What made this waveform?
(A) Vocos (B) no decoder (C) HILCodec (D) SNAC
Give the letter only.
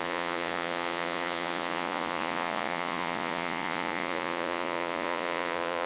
A